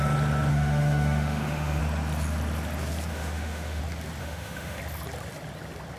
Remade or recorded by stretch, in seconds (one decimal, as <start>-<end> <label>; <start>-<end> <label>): 0.0-0.5 recorded; 0.5-1.8 remade; 1.8-3.1 recorded; 3.1-3.8 remade; 3.8-4.2 recorded; 4.2-4.8 remade; 4.8-6.0 recorded